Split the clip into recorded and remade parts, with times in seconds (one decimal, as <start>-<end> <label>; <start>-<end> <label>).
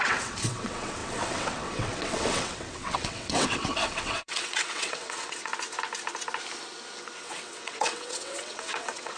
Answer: 0.0-5.5 remade; 5.5-7.2 recorded; 7.2-9.2 remade